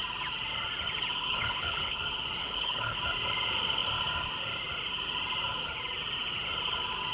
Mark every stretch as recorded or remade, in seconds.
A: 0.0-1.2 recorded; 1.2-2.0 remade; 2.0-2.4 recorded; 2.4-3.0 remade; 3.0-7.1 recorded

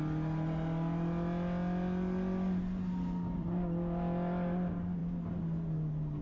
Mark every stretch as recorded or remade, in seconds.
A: 0.0-6.2 recorded

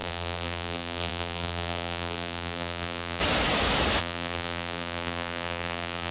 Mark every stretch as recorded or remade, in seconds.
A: 0.0-3.2 remade; 3.2-4.0 recorded; 4.0-6.1 remade

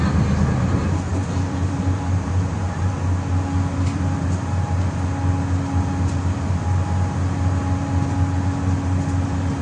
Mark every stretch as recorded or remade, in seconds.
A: 0.0-1.1 recorded; 1.1-2.9 remade; 2.9-9.6 recorded

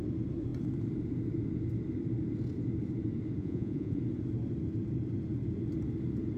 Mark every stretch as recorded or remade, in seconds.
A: 0.0-3.4 recorded; 3.4-4.0 remade; 4.0-6.4 recorded

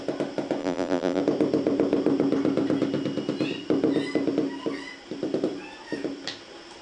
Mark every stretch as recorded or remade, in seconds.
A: 0.0-0.6 recorded; 0.6-1.2 remade; 1.2-6.8 recorded

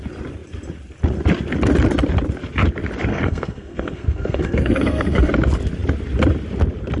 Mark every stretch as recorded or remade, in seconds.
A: 0.0-3.1 recorded; 3.1-5.3 remade; 5.3-7.0 recorded